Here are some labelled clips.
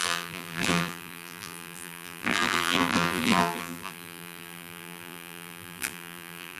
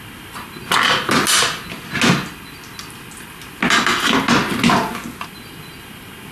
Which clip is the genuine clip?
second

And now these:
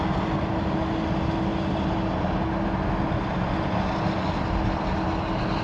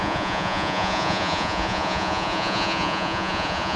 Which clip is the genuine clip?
first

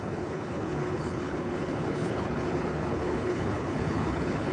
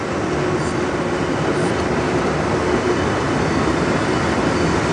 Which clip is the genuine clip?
second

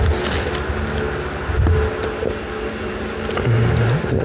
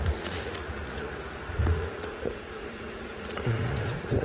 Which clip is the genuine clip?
first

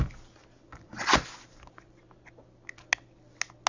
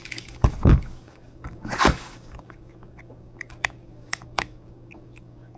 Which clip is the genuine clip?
first